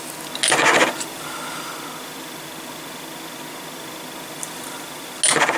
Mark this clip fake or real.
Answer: real